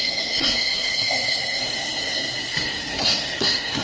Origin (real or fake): fake